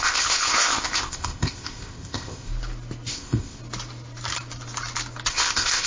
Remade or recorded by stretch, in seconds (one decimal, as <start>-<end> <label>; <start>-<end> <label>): 0.0-2.5 remade; 2.5-3.1 recorded; 3.1-3.6 remade; 3.6-5.3 recorded; 5.3-5.9 remade